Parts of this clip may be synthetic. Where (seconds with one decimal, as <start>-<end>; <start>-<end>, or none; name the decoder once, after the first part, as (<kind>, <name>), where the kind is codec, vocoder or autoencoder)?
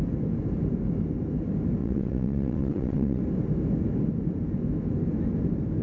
1.8-3.2 (vocoder, WaveNeXt)